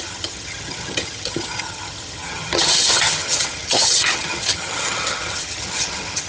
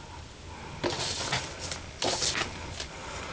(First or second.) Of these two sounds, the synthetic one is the first